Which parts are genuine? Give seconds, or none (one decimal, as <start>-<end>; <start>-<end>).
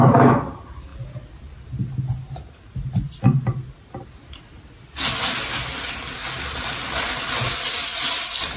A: 0.0-8.6